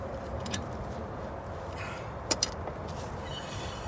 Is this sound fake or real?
fake